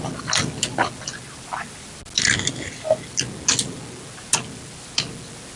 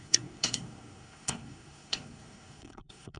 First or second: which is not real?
second